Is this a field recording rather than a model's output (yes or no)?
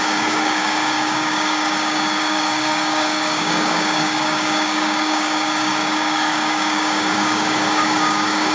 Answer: no